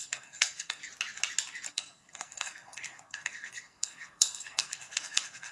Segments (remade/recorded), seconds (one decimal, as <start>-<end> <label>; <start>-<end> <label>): 0.0-0.8 remade; 0.8-1.7 recorded; 1.7-5.5 remade